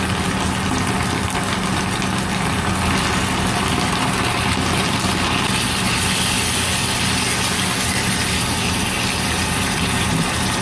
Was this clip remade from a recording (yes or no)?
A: no